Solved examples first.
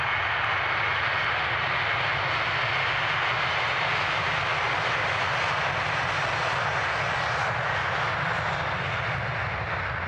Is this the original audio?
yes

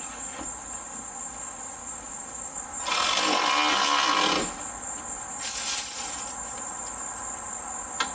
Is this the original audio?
yes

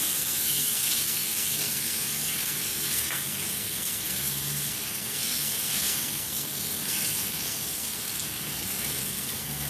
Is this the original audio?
no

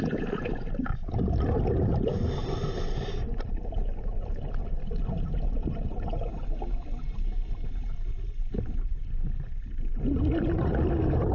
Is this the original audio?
yes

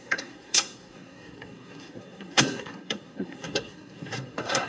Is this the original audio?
no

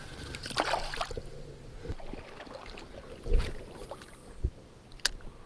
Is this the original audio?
yes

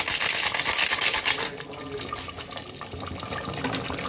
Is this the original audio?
yes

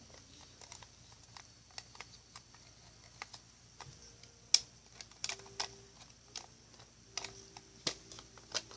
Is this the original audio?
yes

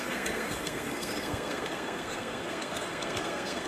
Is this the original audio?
no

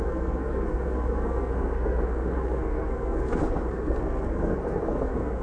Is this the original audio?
no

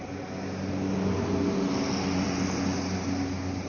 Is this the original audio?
yes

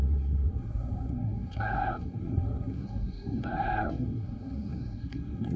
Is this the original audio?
no